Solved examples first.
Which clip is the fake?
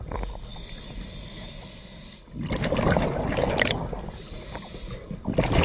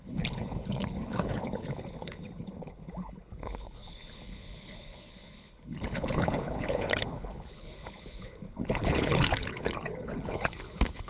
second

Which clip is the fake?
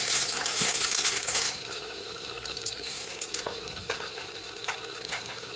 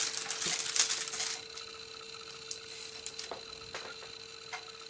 first